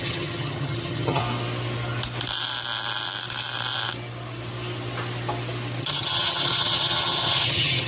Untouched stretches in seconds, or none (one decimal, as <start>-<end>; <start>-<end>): 1.2-5.8